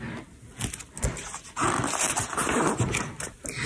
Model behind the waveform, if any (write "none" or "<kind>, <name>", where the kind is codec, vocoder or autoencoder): none